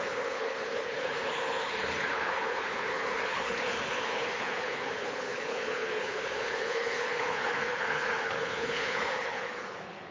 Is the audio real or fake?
fake